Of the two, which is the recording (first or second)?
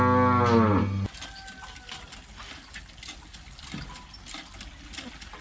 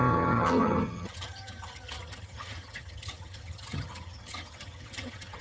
first